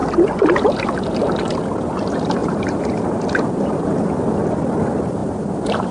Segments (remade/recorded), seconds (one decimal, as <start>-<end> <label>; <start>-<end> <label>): 0.0-2.4 recorded; 2.4-3.9 remade; 3.9-5.2 recorded; 5.2-5.9 remade